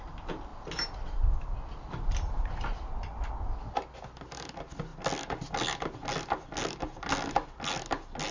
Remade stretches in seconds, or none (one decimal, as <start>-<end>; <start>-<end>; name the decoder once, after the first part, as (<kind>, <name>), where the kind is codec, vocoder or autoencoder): none